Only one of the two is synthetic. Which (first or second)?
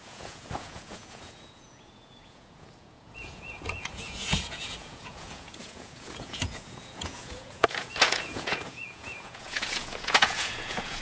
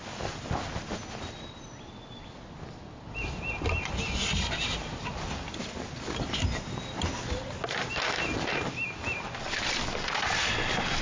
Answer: first